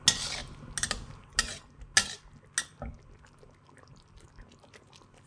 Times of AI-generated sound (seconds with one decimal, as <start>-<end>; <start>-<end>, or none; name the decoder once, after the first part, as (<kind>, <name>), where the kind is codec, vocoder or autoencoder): none